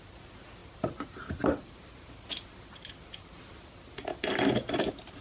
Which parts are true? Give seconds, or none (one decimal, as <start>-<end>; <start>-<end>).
0.0-5.2